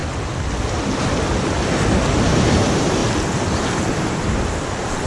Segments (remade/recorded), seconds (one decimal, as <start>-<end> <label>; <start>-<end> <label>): 0.0-2.3 recorded; 2.3-3.0 remade; 3.0-5.1 recorded